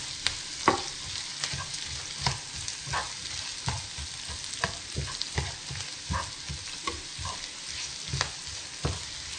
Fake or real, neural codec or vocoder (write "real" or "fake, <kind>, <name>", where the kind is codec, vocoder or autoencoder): real